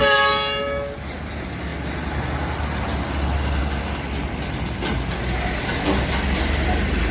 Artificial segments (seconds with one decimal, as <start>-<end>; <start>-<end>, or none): none